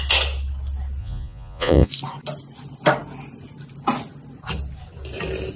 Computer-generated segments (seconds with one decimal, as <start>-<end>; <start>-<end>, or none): 1.0-1.9